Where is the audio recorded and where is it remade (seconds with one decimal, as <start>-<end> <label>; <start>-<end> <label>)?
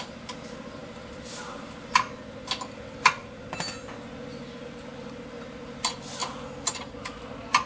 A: 0.0-7.7 recorded